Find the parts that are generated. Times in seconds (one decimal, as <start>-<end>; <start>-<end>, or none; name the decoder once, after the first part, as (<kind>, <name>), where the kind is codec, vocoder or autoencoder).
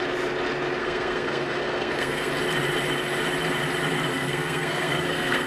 0.8-2.3 (codec, SNAC); 4.1-5.5